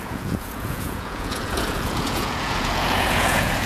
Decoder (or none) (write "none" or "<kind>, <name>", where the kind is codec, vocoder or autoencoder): vocoder, Vocos